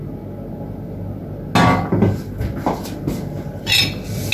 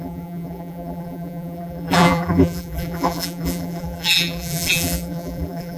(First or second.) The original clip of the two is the first